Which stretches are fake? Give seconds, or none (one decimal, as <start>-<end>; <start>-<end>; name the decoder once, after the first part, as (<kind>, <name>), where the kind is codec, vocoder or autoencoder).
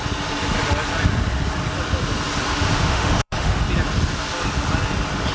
2.8-3.6 (autoencoder, DAC-VAE)